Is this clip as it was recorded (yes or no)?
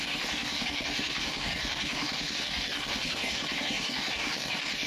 no